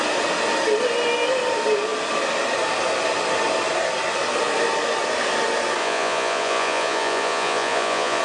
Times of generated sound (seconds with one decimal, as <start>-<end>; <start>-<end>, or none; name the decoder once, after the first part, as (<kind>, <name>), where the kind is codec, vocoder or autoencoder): 5.8-8.2 (vocoder, Vocos)